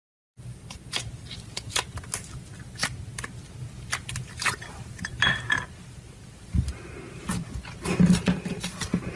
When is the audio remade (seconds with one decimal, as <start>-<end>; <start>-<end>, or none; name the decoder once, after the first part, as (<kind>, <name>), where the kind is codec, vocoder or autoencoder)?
none